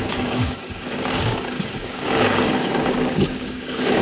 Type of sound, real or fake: fake